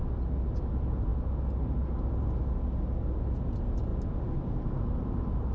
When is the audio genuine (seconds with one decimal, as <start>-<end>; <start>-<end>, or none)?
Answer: 0.0-5.5